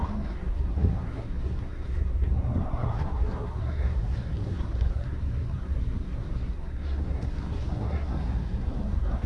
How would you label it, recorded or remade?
remade